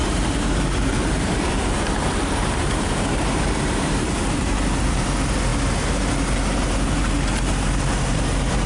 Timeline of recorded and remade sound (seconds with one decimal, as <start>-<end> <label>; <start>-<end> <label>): 0.0-5.1 remade; 5.1-8.7 recorded